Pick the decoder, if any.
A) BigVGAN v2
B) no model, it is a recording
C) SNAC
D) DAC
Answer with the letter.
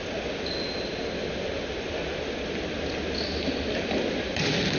B